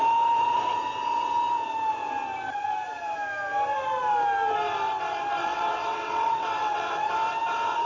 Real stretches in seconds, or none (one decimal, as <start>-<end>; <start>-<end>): 0.0-5.4; 7.1-7.9